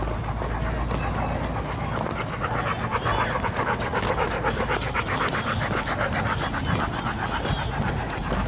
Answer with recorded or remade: recorded